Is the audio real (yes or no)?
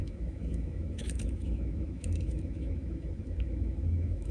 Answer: no